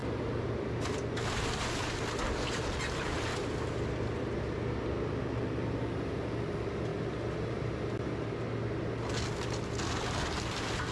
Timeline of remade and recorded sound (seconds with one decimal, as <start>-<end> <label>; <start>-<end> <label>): 0.0-10.9 recorded